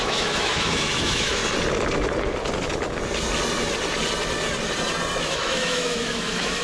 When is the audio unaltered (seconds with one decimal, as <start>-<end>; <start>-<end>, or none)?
1.4-5.2